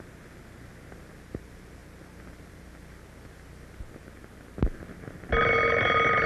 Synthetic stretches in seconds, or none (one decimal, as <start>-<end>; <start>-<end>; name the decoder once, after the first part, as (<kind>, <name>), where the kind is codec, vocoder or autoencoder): none